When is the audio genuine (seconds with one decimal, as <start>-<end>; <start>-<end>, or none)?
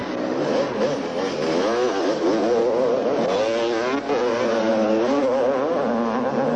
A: 0.0-6.6